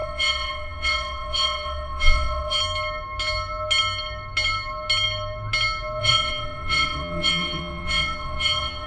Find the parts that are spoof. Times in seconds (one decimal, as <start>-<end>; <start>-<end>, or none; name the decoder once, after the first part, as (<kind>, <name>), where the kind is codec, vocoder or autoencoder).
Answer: 0.0-2.6 (vocoder, WaveNeXt); 6.0-8.9